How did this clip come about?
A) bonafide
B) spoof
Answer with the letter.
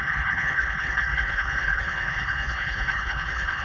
B